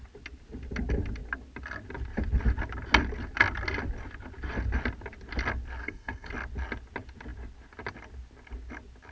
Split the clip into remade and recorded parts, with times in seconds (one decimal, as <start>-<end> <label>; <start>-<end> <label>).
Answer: 0.0-5.8 recorded; 5.8-6.3 remade; 6.3-9.1 recorded